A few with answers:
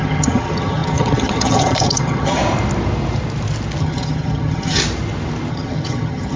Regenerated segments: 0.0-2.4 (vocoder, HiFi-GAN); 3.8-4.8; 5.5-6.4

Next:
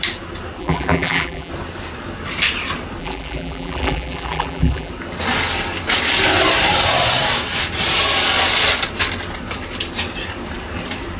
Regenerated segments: 0.6-1.5 (vocoder, BigVGAN v2); 3.0-4.9

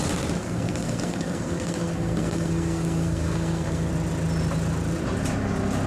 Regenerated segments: 0.4-3.9 (codec, SNAC)

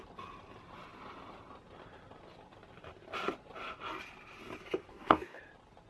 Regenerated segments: 4.9-5.4 (codec, DAC)